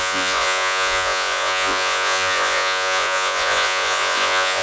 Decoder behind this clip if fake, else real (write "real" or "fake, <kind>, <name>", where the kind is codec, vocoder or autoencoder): fake, vocoder, Vocos